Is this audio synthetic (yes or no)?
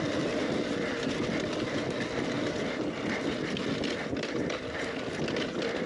no